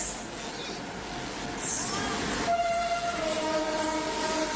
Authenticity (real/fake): real